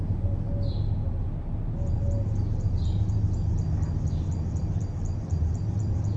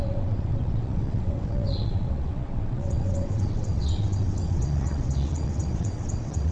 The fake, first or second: second